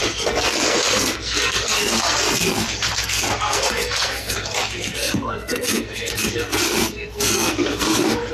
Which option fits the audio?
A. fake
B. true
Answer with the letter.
A